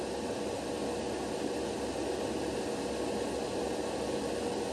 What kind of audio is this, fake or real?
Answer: real